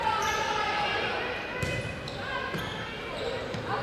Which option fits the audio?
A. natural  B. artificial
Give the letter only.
A